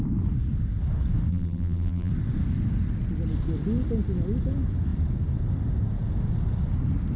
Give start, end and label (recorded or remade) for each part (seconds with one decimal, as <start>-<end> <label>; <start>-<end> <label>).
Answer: 0.0-1.3 recorded; 1.3-2.1 remade; 2.1-7.2 recorded